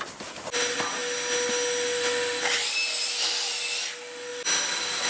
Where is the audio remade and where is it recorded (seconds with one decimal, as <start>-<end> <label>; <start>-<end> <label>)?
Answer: 0.0-5.1 recorded